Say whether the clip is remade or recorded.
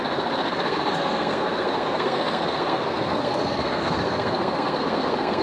remade